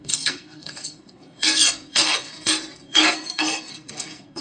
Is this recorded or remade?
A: remade